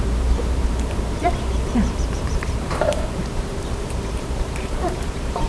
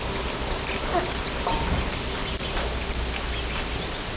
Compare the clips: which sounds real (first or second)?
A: second